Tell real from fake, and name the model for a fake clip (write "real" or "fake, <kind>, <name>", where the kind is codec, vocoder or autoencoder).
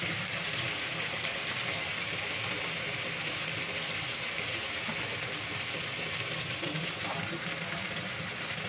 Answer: real